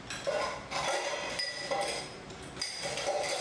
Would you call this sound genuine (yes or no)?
no